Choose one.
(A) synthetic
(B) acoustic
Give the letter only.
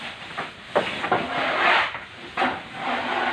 B